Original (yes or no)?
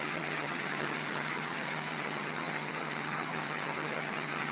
no